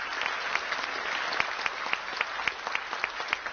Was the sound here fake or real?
real